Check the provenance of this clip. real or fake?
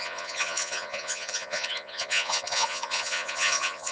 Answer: fake